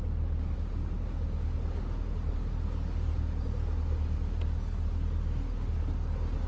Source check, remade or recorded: recorded